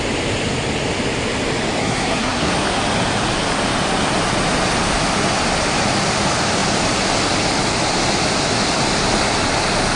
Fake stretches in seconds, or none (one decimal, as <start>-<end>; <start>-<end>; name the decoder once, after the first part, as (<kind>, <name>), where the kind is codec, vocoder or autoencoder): 1.8-2.5 (codec, SNAC)